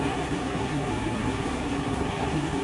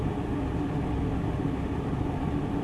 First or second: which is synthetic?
first